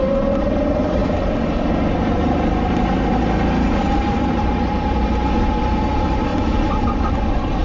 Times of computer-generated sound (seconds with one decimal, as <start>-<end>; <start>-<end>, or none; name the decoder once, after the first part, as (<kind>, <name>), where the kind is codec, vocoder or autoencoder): 0.0-1.0 (vocoder, BigVGAN v2); 3.9-5.2; 5.8-6.3; 7.1-7.6